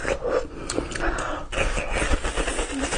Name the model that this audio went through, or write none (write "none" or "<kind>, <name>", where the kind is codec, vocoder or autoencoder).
none